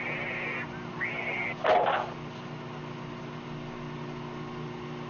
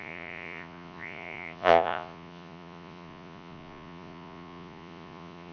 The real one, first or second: first